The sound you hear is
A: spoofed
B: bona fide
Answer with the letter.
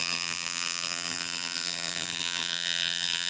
A